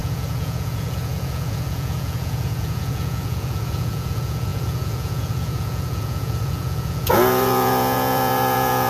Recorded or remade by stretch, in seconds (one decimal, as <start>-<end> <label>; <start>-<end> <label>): 0.0-8.9 remade